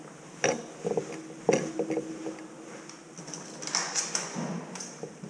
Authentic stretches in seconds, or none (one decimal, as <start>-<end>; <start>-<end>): 0.0-3.8; 4.6-5.3